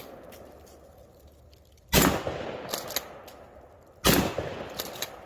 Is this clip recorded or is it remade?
recorded